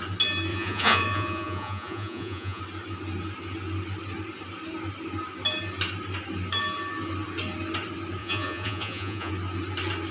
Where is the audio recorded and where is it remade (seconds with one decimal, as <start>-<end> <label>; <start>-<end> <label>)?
0.0-0.5 recorded; 0.5-2.6 remade; 2.6-8.2 recorded; 8.2-9.3 remade; 9.3-10.1 recorded